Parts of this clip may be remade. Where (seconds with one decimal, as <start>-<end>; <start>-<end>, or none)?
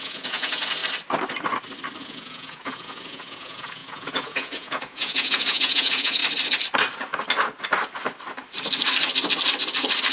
0.0-0.8; 2.0-6.2